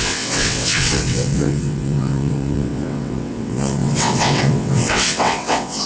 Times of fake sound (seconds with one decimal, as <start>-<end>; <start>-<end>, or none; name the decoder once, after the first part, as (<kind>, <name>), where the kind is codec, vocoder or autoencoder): 0.0-5.9 (vocoder, WaveNeXt)